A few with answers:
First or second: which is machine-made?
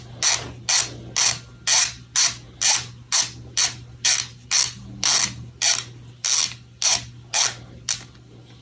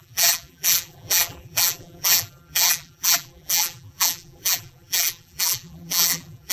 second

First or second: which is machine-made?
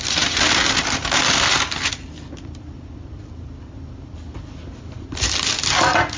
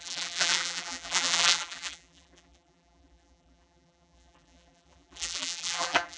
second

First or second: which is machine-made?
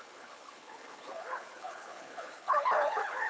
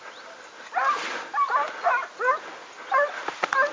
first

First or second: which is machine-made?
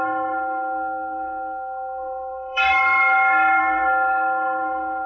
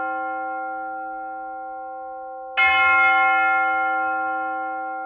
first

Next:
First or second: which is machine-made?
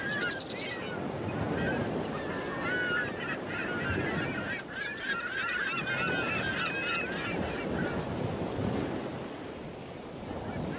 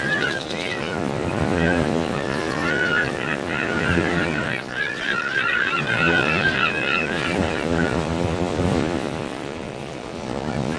second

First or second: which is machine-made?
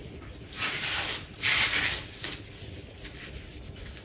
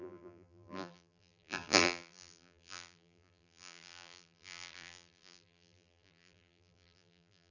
second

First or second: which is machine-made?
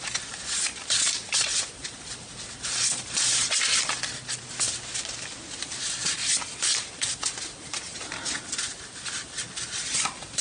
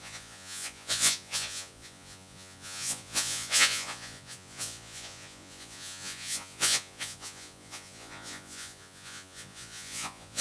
second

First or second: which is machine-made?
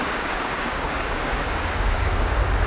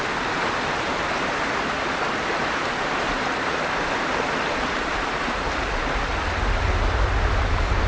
first